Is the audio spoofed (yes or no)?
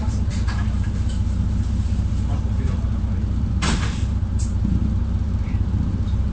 yes